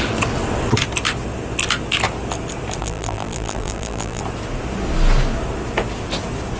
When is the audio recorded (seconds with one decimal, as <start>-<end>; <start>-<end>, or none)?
0.0-2.8; 4.2-6.6